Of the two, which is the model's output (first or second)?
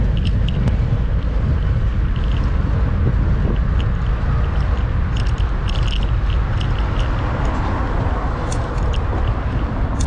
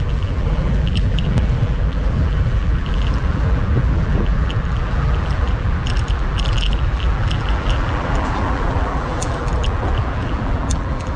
second